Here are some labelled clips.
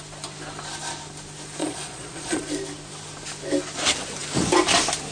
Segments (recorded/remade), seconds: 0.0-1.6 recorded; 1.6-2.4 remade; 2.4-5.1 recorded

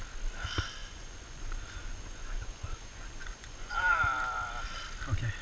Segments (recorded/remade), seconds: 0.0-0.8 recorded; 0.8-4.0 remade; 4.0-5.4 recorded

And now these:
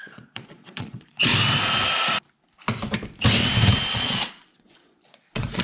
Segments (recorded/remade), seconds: 0.0-1.3 remade; 1.3-3.9 recorded; 3.9-5.6 remade

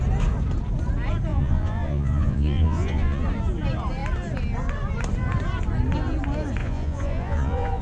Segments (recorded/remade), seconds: 0.0-1.3 recorded; 1.3-3.2 remade; 3.2-6.6 recorded; 6.6-7.8 remade